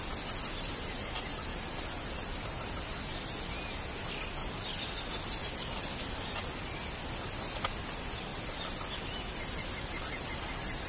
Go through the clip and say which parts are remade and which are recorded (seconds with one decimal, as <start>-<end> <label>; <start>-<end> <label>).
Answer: 0.0-10.9 recorded